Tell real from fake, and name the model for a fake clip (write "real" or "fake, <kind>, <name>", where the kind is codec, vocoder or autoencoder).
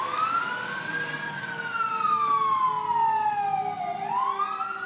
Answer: real